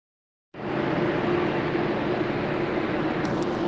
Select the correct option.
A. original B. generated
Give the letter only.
A